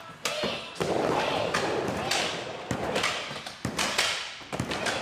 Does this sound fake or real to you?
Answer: real